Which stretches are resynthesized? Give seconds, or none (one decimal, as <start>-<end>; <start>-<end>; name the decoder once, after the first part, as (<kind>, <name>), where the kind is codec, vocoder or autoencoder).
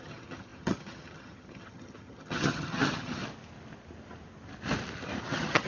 0.0-3.2 (vocoder, HiFi-GAN); 5.2-5.7